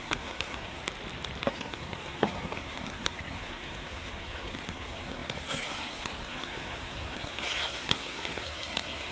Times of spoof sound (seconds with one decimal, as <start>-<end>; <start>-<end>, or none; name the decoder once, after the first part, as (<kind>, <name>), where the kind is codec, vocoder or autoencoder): 0.0-0.8 (codec, SNAC); 1.5-9.1